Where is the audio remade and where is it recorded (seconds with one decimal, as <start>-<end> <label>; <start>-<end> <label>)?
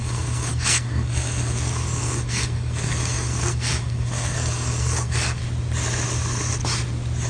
0.0-5.4 remade; 5.4-7.3 recorded